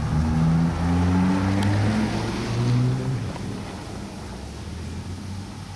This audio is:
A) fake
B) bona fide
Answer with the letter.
B